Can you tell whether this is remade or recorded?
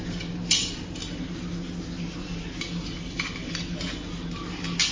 recorded